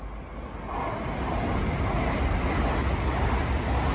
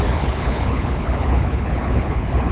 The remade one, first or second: second